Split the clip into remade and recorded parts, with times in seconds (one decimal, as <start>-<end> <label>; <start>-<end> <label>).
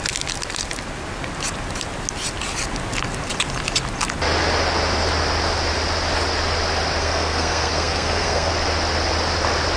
0.0-7.0 recorded; 7.0-8.5 remade; 8.5-9.8 recorded